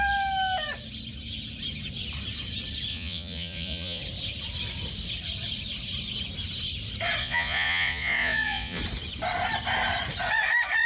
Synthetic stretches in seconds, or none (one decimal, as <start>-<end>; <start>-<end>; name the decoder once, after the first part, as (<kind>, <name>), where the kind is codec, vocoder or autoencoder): 2.9-4.0 (vocoder, Vocos); 7.2-8.8